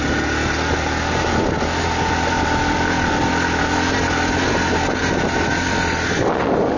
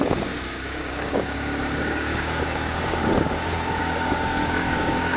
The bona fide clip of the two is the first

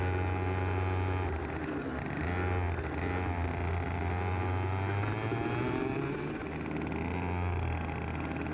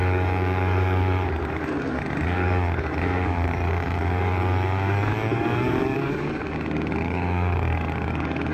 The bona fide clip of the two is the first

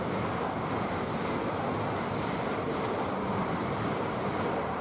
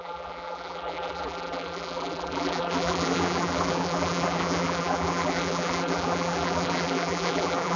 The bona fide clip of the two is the first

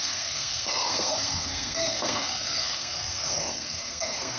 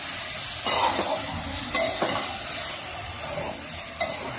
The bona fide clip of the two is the second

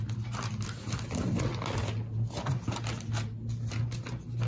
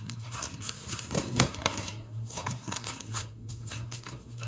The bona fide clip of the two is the first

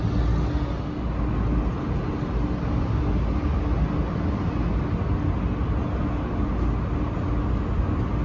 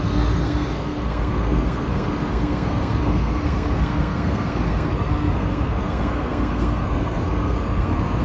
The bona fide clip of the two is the first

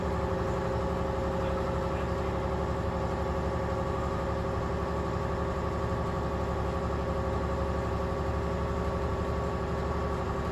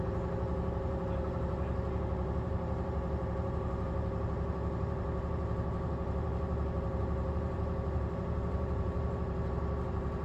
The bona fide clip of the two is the first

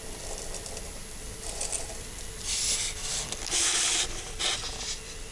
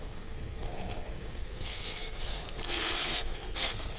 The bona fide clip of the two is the first